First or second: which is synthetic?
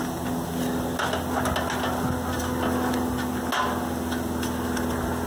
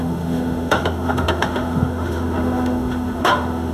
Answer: second